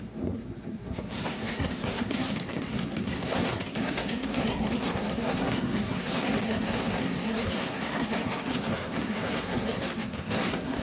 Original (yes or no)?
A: no